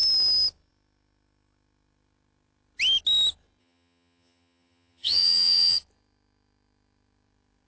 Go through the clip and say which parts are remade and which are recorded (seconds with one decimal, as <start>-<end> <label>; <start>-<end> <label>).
0.0-3.6 recorded; 3.6-5.8 remade; 5.8-7.7 recorded